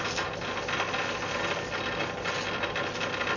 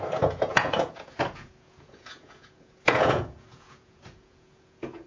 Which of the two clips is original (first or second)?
first